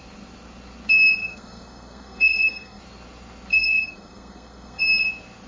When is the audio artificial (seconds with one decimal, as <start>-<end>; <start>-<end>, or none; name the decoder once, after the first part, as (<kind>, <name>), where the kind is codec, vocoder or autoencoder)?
1.2-2.8 (codec, SNAC); 3.5-4.8